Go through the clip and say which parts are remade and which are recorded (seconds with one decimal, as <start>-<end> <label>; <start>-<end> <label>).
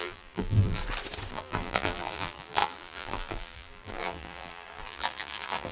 0.0-0.8 remade; 0.8-1.3 recorded; 1.3-5.7 remade